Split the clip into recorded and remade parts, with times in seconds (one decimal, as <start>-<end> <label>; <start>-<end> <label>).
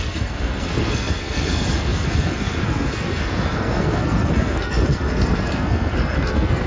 0.0-6.7 remade